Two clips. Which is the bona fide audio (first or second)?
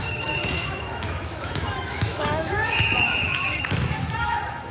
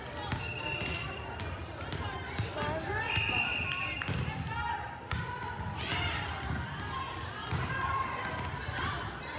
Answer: second